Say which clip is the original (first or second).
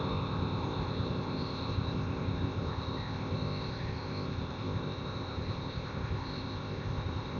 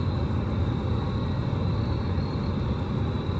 second